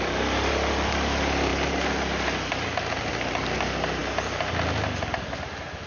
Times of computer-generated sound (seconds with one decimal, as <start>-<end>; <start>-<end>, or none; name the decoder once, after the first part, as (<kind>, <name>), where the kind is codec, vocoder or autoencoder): none